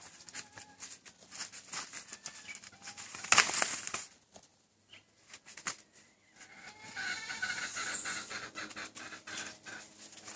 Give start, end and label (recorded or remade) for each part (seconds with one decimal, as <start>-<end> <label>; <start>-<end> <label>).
0.0-6.9 recorded; 6.9-8.6 remade; 8.6-10.4 recorded